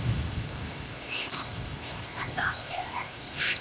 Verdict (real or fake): fake